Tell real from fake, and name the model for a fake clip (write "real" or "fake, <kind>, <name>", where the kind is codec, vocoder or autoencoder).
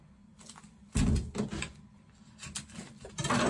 real